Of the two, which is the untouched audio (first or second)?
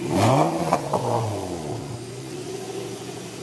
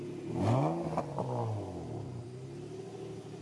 second